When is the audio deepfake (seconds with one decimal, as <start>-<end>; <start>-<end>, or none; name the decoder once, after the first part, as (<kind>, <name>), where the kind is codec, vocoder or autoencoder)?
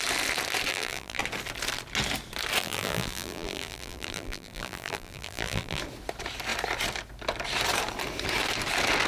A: 0.7-1.2 (vocoder, BigVGAN v2); 2.6-5.8